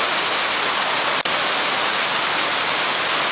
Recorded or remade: recorded